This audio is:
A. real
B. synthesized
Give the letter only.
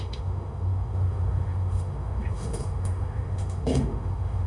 B